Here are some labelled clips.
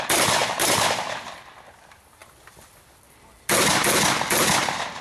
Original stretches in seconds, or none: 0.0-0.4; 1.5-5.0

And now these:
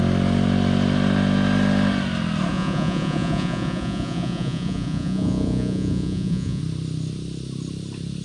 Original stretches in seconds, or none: 0.0-2.5; 6.6-8.2

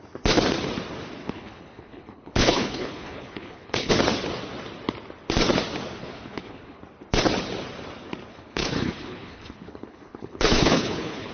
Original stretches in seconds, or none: 0.0-1.2; 3.9-6.0; 6.8-8.3

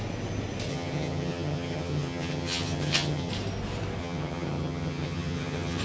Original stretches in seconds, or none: 0.0-0.7; 3.3-4.0

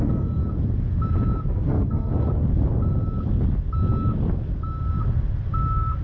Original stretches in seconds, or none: 0.4-1.5; 2.1-6.0